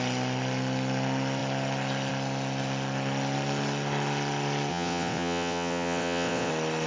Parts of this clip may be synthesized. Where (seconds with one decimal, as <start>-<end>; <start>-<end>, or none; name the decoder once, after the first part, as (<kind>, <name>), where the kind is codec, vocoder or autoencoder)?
4.7-6.5 (vocoder, WaveNeXt)

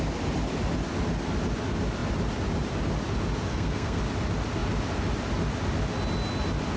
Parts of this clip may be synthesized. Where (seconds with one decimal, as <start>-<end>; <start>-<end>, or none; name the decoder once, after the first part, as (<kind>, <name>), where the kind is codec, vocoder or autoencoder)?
3.5-4.0 (codec, SNAC)